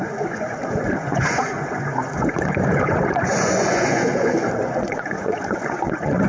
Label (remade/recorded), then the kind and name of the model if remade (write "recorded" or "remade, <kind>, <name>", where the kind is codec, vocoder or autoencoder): remade, vocoder, Vocos